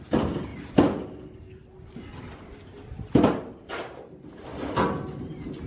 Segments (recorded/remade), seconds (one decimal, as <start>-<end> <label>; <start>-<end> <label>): 0.0-0.5 remade; 0.5-3.7 recorded; 3.7-4.5 remade; 4.5-5.2 recorded; 5.2-5.7 remade